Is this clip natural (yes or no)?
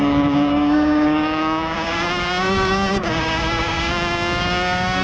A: no